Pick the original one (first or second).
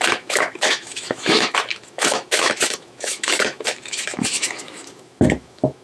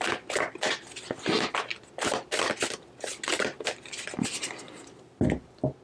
second